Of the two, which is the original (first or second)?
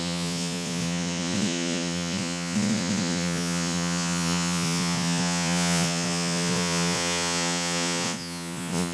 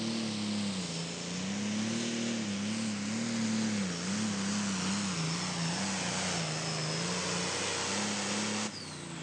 second